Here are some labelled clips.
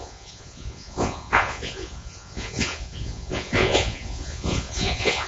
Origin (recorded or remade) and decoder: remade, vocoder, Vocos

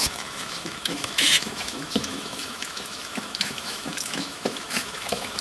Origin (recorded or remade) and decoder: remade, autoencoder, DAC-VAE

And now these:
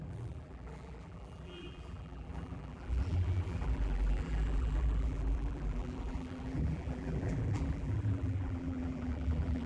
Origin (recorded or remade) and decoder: remade, vocoder, BigVGAN v2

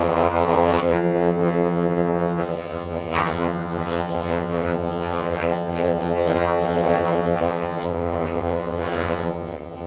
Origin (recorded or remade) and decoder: remade, vocoder, HiFi-GAN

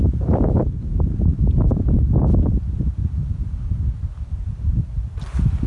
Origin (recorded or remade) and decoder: recorded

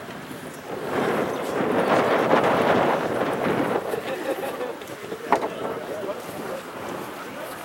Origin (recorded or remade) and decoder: remade, vocoder, BigVGAN v2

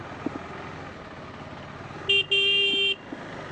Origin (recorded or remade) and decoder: recorded